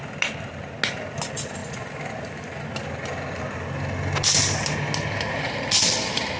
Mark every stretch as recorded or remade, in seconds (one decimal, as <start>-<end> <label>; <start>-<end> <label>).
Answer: 0.0-6.4 recorded